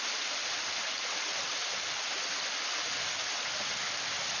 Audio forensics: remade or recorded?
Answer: recorded